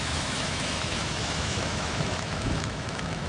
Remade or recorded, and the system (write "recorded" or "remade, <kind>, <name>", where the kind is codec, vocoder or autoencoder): remade, autoencoder, DAC-VAE